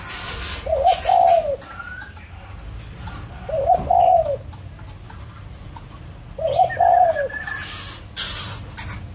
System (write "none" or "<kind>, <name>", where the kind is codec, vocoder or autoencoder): none